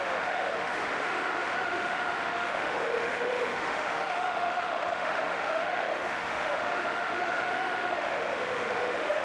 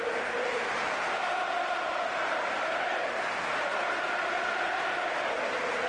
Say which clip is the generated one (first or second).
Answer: first